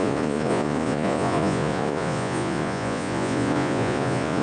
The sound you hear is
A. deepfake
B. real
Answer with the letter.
A